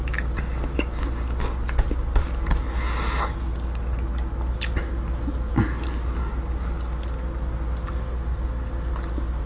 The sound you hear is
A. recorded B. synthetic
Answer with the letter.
A